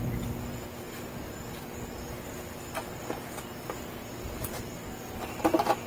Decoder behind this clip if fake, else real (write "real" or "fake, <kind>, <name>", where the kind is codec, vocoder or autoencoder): real